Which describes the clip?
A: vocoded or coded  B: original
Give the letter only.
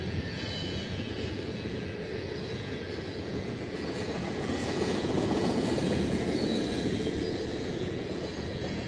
A